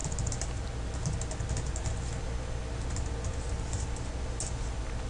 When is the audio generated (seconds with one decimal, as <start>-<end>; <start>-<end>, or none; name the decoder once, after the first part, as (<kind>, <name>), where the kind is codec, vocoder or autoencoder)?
none